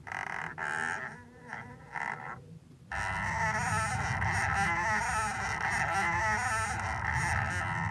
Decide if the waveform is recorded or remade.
recorded